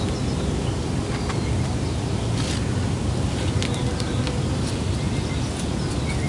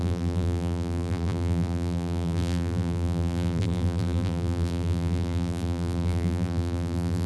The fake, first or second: second